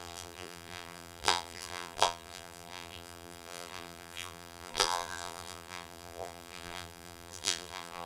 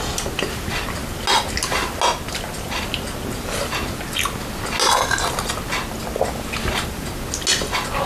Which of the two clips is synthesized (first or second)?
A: first